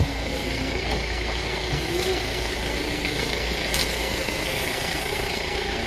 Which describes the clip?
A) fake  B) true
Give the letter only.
A